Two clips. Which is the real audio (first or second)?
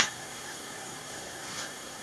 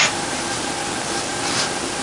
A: second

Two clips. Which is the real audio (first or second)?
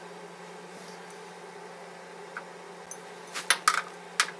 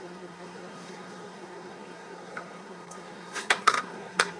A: first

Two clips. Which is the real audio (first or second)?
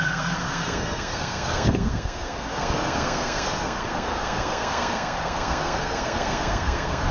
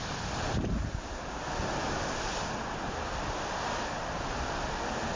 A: second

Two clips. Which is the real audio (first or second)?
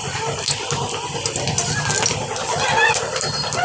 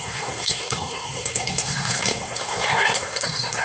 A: first